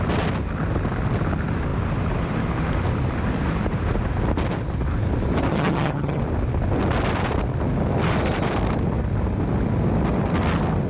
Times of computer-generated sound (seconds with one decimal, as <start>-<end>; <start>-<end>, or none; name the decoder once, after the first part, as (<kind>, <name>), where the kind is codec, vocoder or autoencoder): 5.5-6.2 (vocoder, HiFi-GAN)